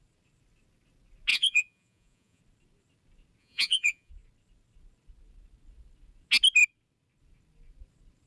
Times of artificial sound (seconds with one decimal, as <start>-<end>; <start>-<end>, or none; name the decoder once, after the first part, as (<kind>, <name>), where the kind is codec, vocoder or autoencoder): 1.3-2.4 (vocoder, Vocos); 3.4-4.1